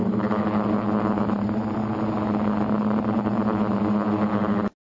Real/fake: real